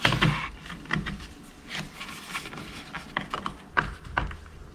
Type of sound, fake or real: real